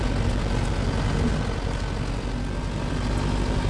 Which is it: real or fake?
real